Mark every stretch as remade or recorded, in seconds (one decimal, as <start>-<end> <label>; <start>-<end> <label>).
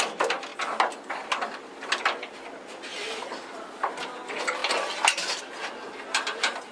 0.0-0.5 remade; 0.5-1.3 recorded; 1.3-4.6 remade; 4.6-5.4 recorded; 5.4-6.7 remade